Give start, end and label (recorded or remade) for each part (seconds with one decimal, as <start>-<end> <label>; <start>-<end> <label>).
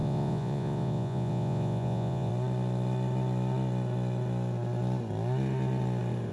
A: 0.0-2.3 remade; 2.3-6.3 recorded